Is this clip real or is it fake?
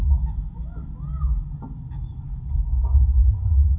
real